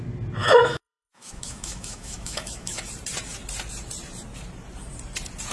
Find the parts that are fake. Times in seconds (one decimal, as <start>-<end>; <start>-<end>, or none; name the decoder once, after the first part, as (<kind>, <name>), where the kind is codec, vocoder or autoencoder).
0.4-2.8 (autoencoder, DAC-VAE)